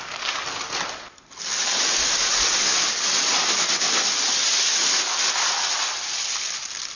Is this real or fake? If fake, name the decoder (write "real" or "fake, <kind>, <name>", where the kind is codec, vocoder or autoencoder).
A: real